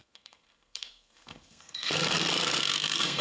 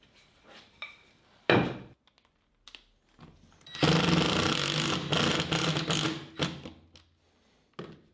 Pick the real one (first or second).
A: second